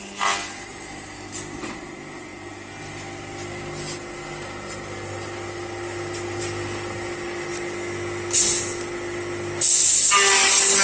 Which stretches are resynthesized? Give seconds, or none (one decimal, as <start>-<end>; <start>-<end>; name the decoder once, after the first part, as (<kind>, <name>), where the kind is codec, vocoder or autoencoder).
none